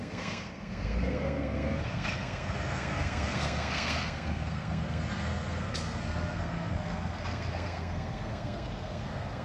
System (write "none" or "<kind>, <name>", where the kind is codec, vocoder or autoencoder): codec, SNAC